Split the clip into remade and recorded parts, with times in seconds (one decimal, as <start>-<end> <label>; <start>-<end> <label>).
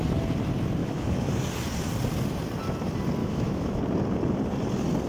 0.0-0.8 recorded; 0.8-1.3 remade; 1.3-3.2 recorded; 3.2-3.8 remade; 3.8-5.1 recorded